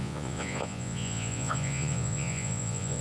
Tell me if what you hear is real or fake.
fake